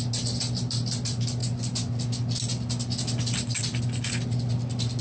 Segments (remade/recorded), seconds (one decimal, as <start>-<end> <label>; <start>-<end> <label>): 0.0-5.0 recorded